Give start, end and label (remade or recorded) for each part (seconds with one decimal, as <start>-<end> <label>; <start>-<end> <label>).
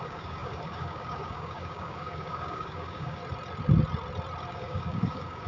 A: 0.0-3.2 remade; 3.2-4.5 recorded; 4.5-5.5 remade